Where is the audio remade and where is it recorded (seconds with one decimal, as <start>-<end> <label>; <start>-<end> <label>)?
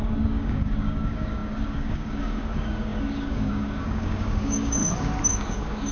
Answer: 0.0-4.8 remade; 4.8-5.3 recorded; 5.3-5.9 remade